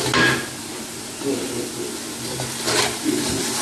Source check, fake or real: real